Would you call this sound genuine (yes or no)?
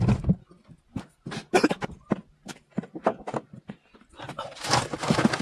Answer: yes